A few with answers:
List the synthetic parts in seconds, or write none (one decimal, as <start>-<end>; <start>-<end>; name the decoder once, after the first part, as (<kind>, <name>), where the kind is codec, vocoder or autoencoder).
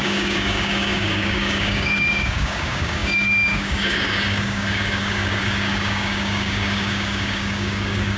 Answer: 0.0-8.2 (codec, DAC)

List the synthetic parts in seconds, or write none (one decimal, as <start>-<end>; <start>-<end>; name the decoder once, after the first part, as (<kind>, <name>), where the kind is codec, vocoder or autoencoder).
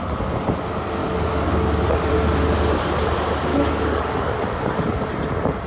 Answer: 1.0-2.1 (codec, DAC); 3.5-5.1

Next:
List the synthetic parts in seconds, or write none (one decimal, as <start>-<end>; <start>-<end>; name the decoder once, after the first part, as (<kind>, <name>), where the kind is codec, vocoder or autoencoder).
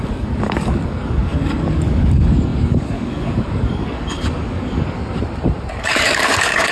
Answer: 0.0-5.0 (codec, DAC); 5.8-6.7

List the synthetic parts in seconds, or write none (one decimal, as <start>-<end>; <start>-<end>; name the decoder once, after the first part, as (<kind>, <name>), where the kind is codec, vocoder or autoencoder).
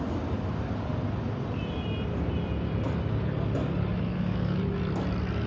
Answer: 4.1-4.6 (codec, DAC)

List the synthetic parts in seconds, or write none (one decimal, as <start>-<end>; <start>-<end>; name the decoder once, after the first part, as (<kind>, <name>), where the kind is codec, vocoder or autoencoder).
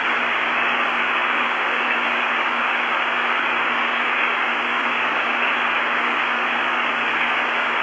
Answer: 0.0-7.8 (codec, DAC)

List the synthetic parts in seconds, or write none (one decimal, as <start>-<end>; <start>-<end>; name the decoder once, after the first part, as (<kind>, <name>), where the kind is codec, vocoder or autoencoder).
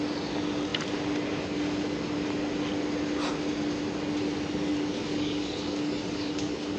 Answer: 4.7-6.8 (codec, DAC)